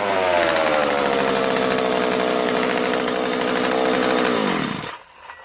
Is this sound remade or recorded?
recorded